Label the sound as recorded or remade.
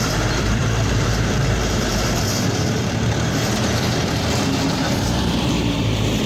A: remade